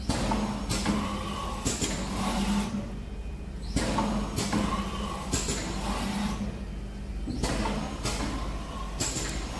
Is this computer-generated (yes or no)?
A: no